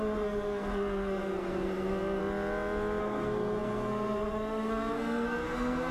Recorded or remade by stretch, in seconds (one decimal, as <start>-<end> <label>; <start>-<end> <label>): 0.0-2.2 remade; 2.2-3.0 recorded; 3.0-5.9 remade